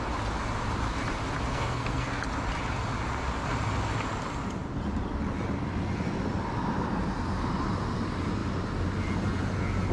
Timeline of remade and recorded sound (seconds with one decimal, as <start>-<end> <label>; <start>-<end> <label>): 0.0-1.5 recorded; 1.5-2.2 remade; 2.2-9.9 recorded